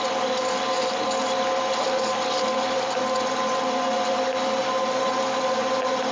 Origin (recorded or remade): recorded